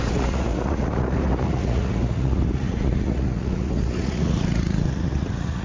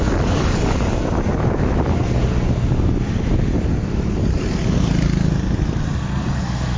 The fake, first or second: first